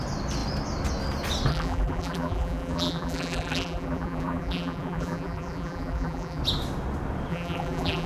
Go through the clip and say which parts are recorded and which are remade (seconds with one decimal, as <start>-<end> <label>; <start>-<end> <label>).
0.0-1.5 recorded; 1.5-6.4 remade; 6.4-7.3 recorded; 7.3-8.1 remade